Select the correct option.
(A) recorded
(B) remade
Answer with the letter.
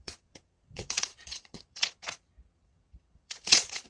B